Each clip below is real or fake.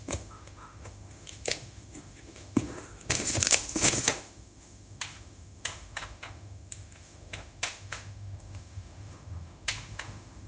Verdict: fake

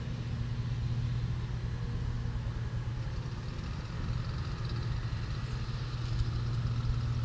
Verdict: real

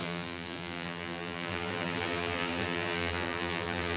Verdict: fake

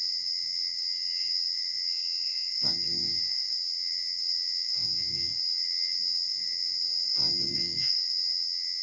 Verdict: fake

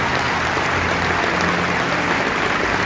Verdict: real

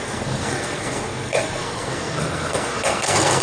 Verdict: fake